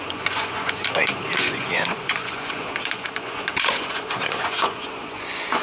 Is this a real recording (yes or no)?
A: no